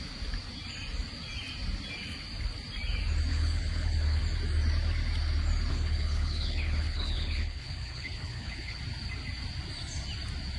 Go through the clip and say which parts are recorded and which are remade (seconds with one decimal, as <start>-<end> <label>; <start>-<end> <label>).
0.0-3.3 recorded; 3.3-4.2 remade; 4.2-5.7 recorded; 5.7-8.8 remade; 8.8-10.6 recorded